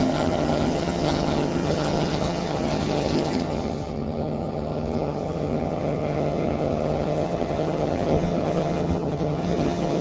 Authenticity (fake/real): fake